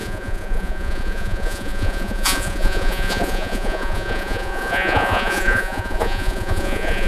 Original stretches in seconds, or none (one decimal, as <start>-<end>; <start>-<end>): none

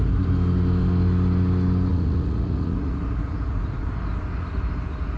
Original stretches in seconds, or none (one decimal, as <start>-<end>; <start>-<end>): 0.0-1.9; 3.9-5.2

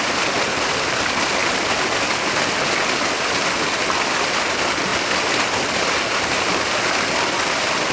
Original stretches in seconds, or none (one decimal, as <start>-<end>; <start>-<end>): 0.0-7.9

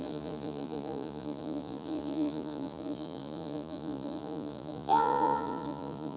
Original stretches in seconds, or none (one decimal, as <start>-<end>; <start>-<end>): none

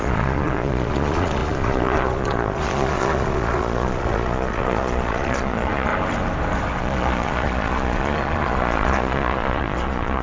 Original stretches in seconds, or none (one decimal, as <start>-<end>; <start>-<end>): 5.9-6.8

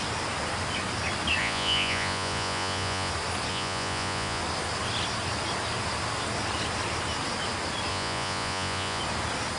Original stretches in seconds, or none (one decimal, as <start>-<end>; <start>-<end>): 0.0-1.4; 3.1-3.5; 4.4-7.9; 9.0-9.6

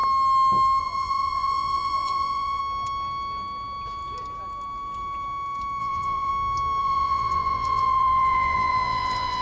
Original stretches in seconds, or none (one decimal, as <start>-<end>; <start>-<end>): 0.0-0.8; 2.6-5.8; 6.3-6.8